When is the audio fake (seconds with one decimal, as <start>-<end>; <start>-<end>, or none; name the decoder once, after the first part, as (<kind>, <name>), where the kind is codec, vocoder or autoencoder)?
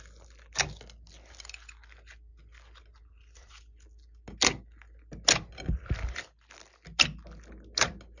none